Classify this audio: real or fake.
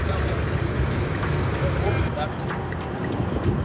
real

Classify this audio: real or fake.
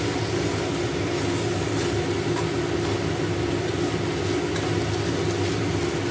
real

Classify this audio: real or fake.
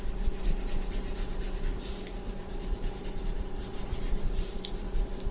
fake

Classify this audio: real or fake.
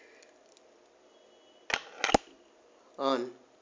real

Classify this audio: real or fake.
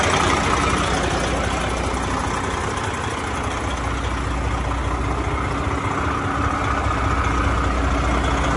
real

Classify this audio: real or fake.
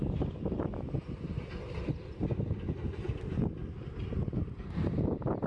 real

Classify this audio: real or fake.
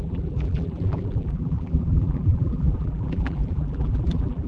fake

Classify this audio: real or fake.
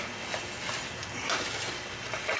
real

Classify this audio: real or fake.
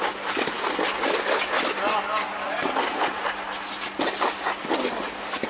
real